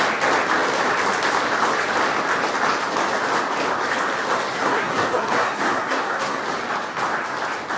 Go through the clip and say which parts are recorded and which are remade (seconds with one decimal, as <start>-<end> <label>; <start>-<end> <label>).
0.0-4.5 recorded; 4.5-6.4 remade; 6.4-7.8 recorded